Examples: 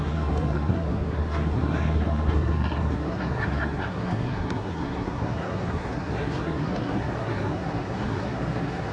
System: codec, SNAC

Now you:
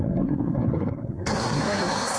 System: codec, SNAC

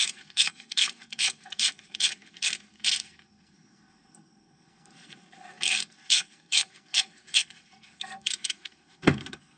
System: codec, SNAC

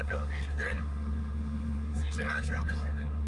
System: codec, SNAC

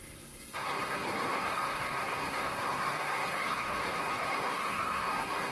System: codec, SNAC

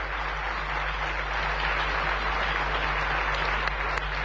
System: none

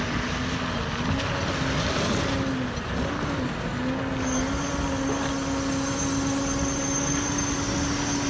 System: none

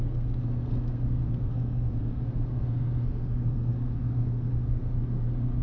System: codec, SNAC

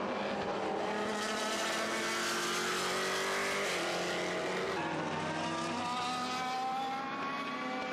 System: none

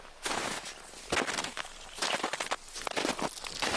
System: none